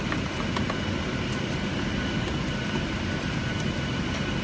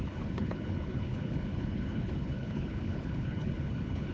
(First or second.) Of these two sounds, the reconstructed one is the second